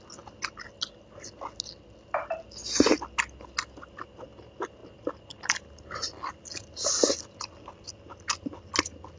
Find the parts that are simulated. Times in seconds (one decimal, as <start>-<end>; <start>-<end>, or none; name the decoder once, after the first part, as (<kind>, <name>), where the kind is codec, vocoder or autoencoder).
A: none